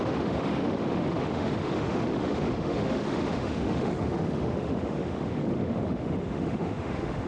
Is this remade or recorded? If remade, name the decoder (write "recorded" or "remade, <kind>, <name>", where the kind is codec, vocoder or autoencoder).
remade, autoencoder, DAC-VAE